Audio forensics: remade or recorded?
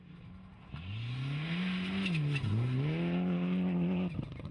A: recorded